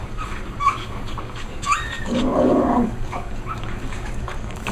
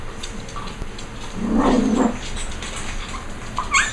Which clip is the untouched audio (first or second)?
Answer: second